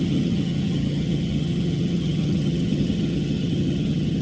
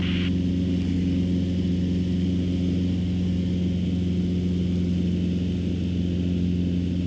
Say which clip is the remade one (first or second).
first